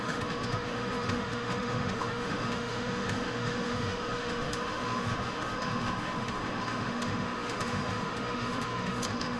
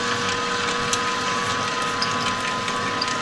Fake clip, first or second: first